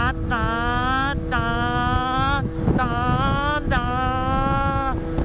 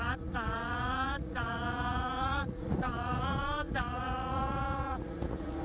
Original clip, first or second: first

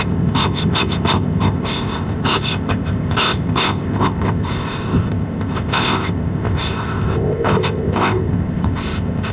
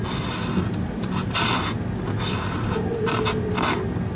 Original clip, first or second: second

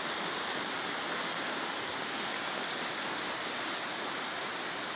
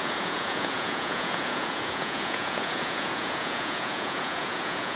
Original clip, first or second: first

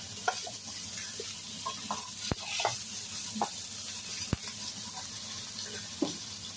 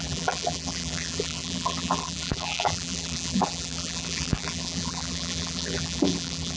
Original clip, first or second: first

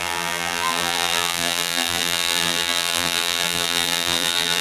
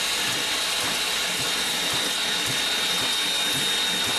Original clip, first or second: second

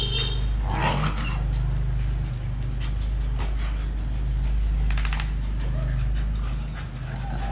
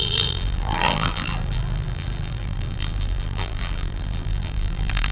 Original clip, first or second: first